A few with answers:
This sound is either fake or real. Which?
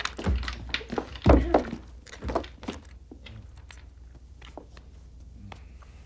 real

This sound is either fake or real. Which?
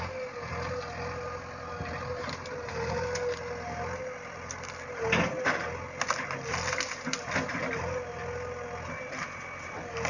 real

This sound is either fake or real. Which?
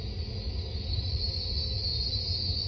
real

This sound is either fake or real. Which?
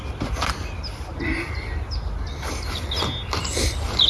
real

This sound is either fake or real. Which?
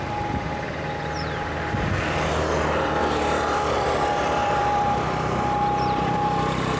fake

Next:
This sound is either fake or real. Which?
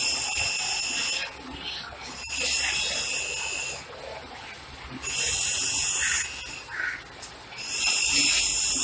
real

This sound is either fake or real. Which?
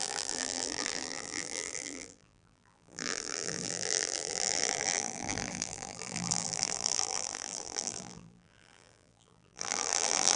fake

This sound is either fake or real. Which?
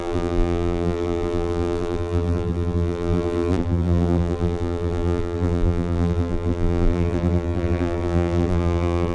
fake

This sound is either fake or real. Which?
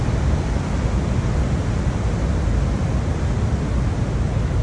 real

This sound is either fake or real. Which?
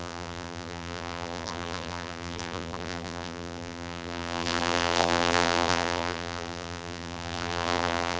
fake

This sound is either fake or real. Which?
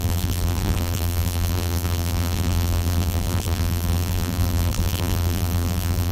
fake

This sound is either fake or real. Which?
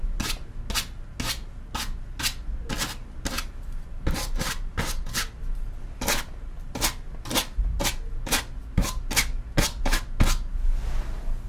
real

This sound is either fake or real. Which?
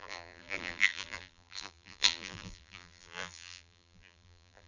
fake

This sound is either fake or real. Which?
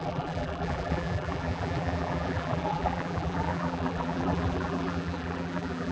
fake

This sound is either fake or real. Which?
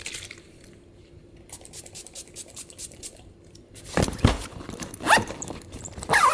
fake